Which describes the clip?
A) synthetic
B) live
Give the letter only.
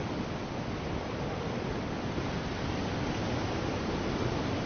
A